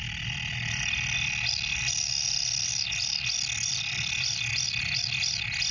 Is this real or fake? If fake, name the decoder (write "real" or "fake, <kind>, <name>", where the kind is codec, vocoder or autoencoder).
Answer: real